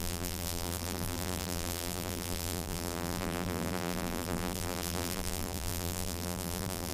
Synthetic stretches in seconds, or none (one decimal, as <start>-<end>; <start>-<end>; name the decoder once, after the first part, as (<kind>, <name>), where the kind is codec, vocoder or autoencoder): 0.0-6.9 (vocoder, BigVGAN v2)